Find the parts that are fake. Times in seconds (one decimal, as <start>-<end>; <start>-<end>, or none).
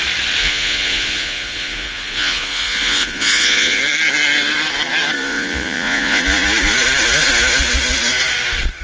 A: 0.4-3.8; 5.3-6.2